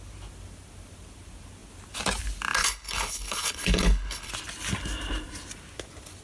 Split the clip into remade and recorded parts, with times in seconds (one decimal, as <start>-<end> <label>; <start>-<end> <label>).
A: 0.0-2.6 recorded; 2.6-4.3 remade; 4.3-6.2 recorded